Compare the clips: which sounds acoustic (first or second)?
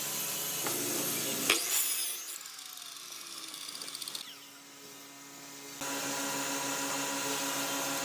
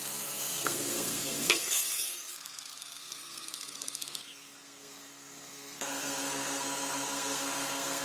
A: first